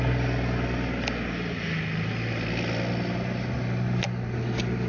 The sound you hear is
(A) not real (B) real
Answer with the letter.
B